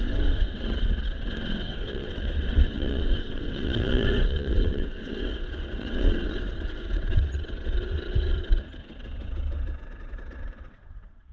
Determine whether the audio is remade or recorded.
remade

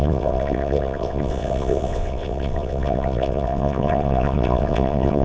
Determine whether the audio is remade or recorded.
remade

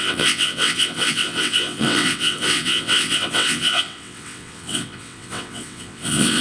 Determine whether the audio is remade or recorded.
remade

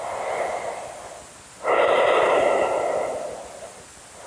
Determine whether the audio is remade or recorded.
recorded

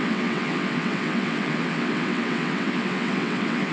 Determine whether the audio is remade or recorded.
remade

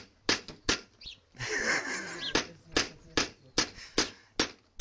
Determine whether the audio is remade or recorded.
recorded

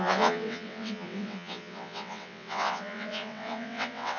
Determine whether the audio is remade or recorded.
remade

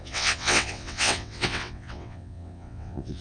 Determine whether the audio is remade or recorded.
remade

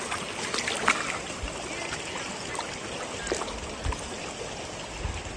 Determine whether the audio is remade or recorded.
recorded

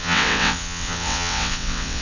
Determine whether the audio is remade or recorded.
remade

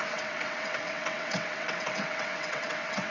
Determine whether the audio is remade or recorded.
remade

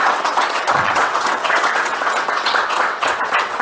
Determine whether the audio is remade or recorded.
remade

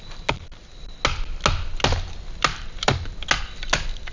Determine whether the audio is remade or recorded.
recorded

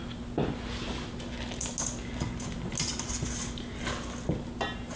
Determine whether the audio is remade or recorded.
recorded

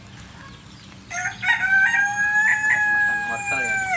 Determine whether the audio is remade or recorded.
recorded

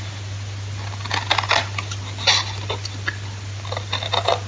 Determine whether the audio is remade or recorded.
recorded